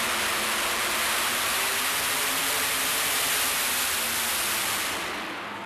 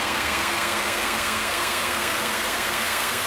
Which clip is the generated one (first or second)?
second